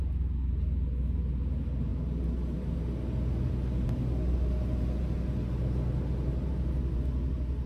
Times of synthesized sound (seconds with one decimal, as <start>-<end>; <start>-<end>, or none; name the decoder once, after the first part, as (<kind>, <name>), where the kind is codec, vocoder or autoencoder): none